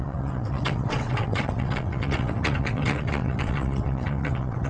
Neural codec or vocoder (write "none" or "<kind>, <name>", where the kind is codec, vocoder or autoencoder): vocoder, WaveNeXt